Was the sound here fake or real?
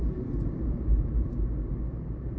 fake